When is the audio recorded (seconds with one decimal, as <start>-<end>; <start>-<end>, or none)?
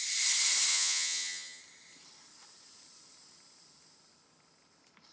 0.0-0.7; 1.6-5.1